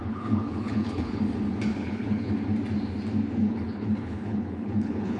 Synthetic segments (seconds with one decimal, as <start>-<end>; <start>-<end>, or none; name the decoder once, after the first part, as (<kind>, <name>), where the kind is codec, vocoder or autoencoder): 0.0-1.2 (codec, HILCodec); 1.7-2.3; 3.4-5.2